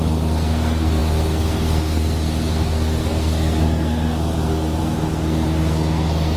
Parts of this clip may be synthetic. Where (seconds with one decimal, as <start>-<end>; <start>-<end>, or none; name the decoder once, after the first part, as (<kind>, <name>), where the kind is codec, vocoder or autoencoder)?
0.0-6.4 (codec, SNAC)